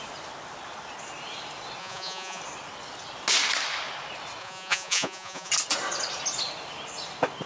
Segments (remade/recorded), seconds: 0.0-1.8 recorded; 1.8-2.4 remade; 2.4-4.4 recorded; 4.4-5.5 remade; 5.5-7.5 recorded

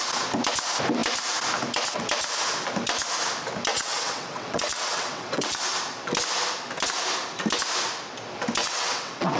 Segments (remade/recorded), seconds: 0.0-3.7 recorded; 3.7-5.6 remade; 5.6-8.6 recorded; 8.6-9.4 remade

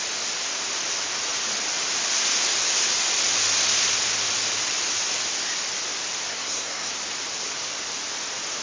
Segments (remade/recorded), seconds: 0.0-6.3 recorded; 6.3-6.9 remade; 6.9-8.6 recorded

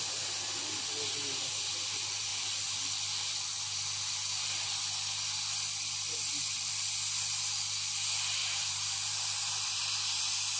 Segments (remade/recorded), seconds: 0.0-8.4 recorded; 8.4-10.2 remade; 10.2-10.6 recorded

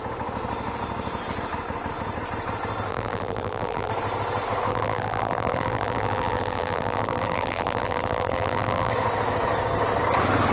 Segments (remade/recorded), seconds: 0.0-2.9 recorded; 2.9-3.9 remade; 3.9-4.7 recorded; 4.7-8.9 remade; 8.9-10.5 recorded

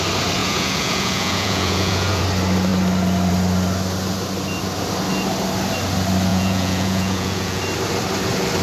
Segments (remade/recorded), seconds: 0.0-0.4 recorded; 0.4-2.2 remade; 2.2-6.3 recorded; 6.3-7.6 remade; 7.6-8.6 recorded

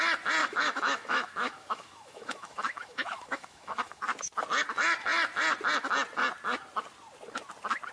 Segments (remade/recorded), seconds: 0.0-0.4 recorded; 0.4-4.0 remade; 4.0-7.9 recorded